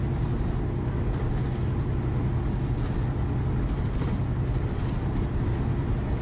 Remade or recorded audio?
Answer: recorded